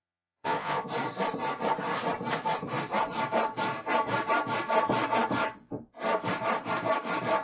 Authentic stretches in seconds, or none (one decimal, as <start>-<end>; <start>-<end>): 0.9-7.4